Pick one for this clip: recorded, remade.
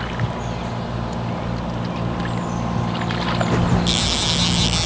recorded